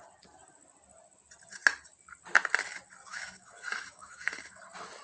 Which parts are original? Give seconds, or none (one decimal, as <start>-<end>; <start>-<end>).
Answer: 0.0-3.1; 4.6-5.0